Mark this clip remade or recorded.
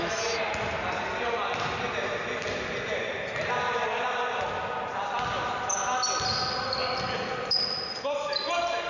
recorded